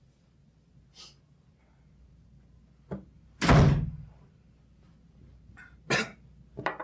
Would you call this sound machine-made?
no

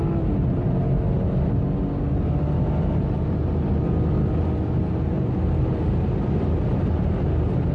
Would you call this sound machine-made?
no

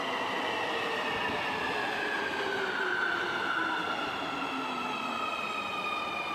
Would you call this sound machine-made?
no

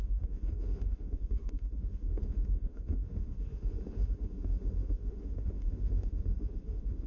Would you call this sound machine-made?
yes